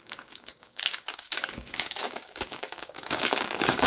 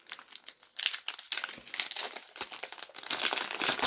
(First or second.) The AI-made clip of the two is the first